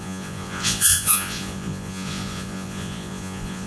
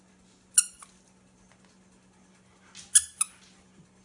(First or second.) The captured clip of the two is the second